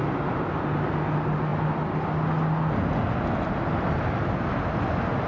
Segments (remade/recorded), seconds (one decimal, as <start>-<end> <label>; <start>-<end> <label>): 0.0-5.3 recorded

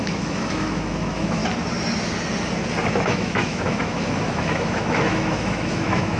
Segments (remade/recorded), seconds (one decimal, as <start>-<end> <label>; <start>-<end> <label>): 0.0-1.4 remade; 1.4-2.9 recorded; 2.9-6.2 remade

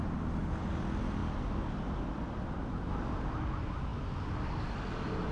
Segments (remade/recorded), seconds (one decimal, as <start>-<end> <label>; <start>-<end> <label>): 0.0-5.3 recorded

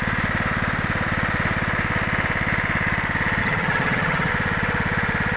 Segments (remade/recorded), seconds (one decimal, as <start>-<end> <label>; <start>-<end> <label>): 0.0-3.4 recorded; 3.4-4.3 remade; 4.3-5.4 recorded

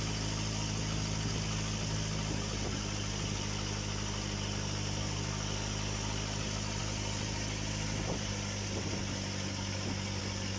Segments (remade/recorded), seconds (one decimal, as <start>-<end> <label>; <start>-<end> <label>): 0.0-10.6 recorded

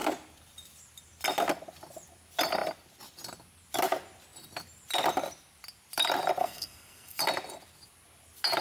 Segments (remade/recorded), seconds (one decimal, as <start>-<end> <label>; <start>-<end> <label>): 0.0-6.4 recorded; 6.4-7.2 remade; 7.2-8.6 recorded

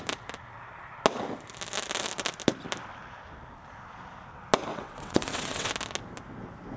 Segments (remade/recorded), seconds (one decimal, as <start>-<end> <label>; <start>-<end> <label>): 0.0-4.7 recorded; 4.7-5.7 remade; 5.7-6.8 recorded

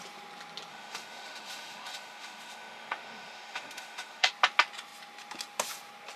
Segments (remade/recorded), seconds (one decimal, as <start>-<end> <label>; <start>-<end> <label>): 0.0-0.7 recorded; 0.7-4.3 remade; 4.3-6.2 recorded